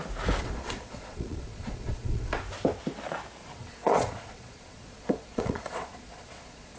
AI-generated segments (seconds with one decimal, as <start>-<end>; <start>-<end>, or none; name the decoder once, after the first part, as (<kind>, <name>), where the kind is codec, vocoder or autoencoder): 0.4-2.4 (vocoder, Vocos); 3.4-6.8

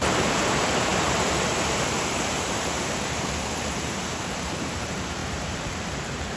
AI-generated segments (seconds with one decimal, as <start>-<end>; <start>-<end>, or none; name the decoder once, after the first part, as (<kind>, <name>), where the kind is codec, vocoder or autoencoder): 0.0-6.4 (vocoder, BigVGAN v2)

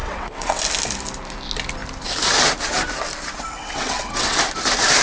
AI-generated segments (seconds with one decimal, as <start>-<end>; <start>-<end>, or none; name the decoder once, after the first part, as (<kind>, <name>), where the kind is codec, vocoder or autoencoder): 0.0-0.6 (vocoder, WaveNeXt); 3.6-4.4

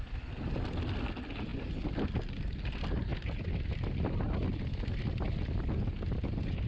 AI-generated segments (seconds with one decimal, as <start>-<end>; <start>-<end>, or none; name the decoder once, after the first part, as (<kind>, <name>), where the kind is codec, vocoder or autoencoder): none